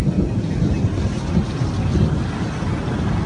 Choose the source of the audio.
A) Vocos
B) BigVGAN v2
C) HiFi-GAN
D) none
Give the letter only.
D